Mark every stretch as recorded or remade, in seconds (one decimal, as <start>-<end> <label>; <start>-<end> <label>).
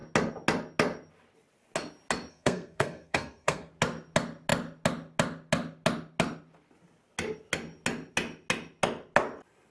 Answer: 0.0-2.3 recorded; 2.3-3.7 remade; 3.7-9.7 recorded